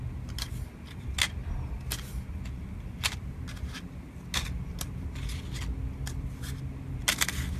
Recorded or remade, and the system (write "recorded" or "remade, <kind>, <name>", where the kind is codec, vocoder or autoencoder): recorded